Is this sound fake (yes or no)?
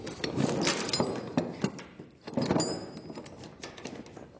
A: no